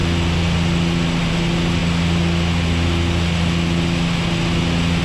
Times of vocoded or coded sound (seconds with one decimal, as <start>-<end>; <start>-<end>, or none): none